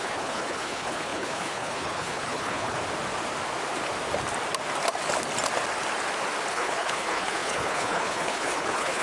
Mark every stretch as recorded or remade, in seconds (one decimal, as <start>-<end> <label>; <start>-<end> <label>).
0.0-2.8 remade; 2.8-6.5 recorded; 6.5-9.0 remade